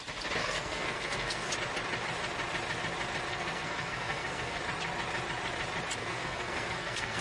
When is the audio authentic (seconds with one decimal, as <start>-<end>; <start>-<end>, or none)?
0.0-0.4; 1.5-3.3; 4.6-6.0